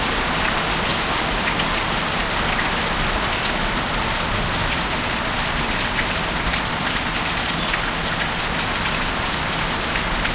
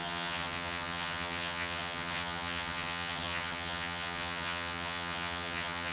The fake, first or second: second